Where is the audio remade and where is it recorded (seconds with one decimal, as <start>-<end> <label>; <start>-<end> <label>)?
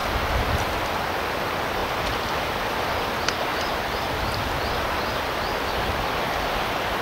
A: 0.0-1.1 remade; 1.1-1.8 recorded; 1.8-2.4 remade; 2.4-3.5 recorded; 3.5-7.0 remade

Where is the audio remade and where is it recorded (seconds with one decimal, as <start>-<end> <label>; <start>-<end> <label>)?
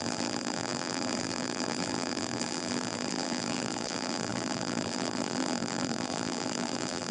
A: 0.0-7.1 remade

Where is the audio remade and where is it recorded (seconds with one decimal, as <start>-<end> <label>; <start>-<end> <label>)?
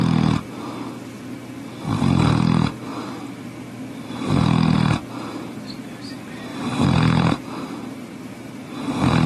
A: 0.0-2.9 recorded; 2.9-3.9 remade; 3.9-6.5 recorded; 6.5-7.4 remade; 7.4-9.3 recorded